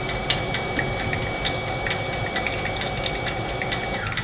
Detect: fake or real real